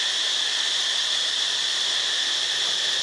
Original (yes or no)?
yes